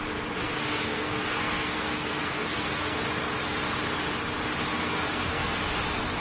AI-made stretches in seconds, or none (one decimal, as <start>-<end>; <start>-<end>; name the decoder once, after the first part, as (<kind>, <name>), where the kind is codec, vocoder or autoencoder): 0.4-3.0 (codec, SNAC); 4.7-5.6

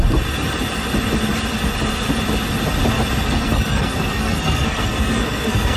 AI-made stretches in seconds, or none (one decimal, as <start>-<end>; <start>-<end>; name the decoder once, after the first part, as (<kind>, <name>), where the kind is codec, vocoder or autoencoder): 3.2-5.8 (codec, SNAC)

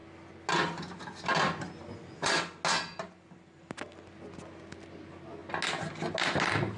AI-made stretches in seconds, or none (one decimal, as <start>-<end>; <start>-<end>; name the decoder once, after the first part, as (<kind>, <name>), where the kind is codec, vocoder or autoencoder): none

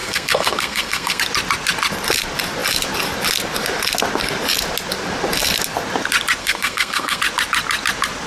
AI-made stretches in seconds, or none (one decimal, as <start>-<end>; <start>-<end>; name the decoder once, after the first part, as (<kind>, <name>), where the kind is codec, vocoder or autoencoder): 0.0-1.2 (codec, SNAC); 6.4-7.2

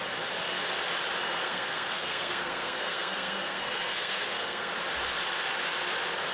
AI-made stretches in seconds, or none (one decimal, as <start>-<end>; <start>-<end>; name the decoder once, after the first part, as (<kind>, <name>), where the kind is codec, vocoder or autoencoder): 1.4-4.7 (codec, SNAC)

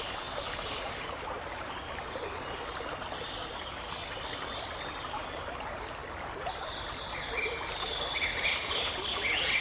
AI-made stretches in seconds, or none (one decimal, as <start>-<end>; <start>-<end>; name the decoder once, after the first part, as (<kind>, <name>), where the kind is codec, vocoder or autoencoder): none

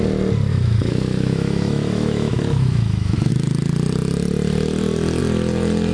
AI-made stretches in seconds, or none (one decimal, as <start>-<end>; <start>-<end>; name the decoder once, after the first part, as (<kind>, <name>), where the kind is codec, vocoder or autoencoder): 0.5-3.3 (autoencoder, DAC-VAE)

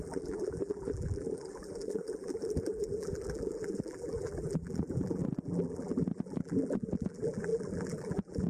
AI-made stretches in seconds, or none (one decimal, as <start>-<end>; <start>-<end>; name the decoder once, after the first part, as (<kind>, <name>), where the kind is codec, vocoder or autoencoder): 0.0-8.5 (vocoder, BigVGAN v2)